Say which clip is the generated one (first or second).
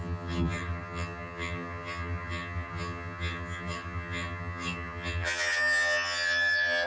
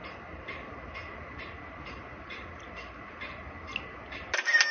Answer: first